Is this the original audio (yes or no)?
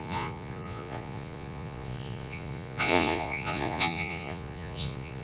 no